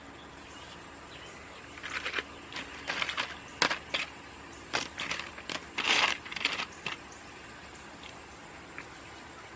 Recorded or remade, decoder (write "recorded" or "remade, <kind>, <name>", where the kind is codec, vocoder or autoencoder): recorded